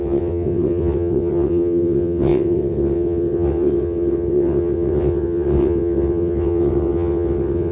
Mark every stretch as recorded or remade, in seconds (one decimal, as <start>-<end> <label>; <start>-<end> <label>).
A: 0.0-7.7 remade